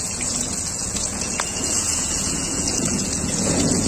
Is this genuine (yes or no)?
no